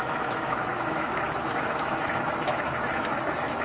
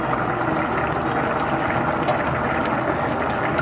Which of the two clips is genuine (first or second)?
second